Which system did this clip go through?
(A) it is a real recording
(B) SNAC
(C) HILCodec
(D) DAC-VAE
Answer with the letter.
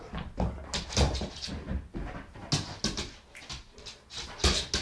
A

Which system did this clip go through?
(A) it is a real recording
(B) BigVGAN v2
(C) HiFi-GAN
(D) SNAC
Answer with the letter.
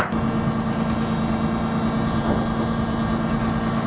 A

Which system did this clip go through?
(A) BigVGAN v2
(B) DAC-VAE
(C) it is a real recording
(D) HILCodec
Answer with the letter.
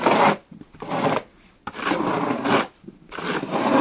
C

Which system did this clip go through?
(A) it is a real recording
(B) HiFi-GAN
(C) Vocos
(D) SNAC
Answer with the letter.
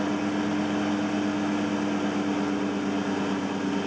A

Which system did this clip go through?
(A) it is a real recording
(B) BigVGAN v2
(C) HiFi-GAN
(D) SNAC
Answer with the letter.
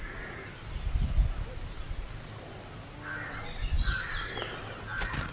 A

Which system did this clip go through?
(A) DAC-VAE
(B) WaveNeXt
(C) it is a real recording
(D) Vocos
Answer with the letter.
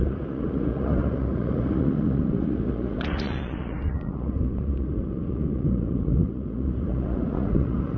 D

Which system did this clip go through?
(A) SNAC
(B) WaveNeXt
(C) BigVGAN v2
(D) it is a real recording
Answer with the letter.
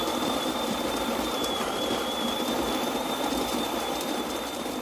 C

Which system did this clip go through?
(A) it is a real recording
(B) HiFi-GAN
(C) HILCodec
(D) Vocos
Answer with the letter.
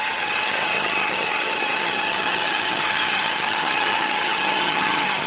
B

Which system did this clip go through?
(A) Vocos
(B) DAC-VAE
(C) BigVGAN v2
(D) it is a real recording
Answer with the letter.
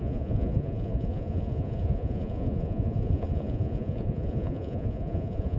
A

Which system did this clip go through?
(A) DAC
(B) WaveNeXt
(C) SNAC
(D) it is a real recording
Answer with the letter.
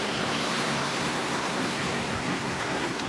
C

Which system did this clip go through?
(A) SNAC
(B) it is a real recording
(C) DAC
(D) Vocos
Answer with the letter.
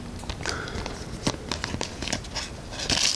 B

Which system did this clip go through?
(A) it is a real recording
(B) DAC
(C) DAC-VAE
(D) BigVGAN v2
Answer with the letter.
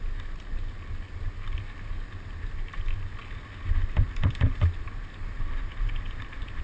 A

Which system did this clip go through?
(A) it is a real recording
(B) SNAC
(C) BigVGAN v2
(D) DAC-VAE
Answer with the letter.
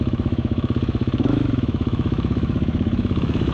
D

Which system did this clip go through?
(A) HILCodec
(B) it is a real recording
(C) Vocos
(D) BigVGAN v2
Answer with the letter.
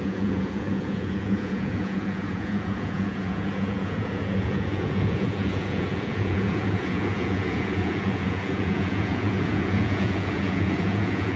C